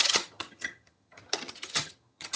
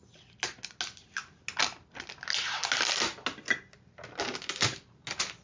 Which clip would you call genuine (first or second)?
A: second